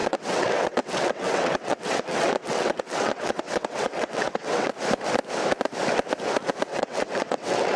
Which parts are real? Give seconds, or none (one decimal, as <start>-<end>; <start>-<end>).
4.7-6.7